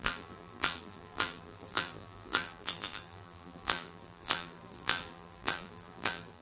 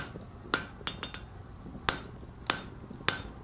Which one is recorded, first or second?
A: second